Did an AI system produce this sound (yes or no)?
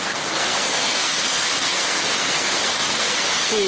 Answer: yes